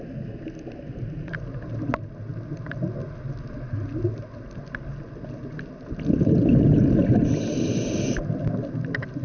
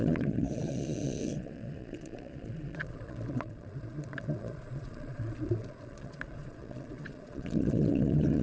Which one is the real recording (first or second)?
first